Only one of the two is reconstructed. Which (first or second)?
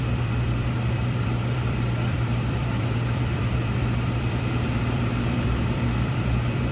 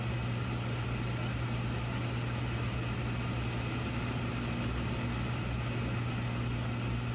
first